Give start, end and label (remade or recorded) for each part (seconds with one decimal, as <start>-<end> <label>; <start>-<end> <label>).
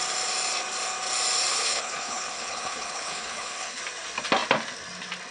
0.0-1.5 recorded; 1.5-3.8 remade; 3.8-5.3 recorded